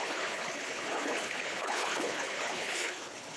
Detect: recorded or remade remade